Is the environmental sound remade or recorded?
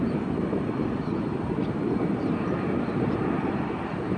remade